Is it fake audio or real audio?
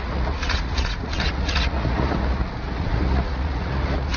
fake